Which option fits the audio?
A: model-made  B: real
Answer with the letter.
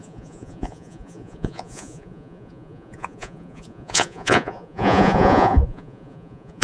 A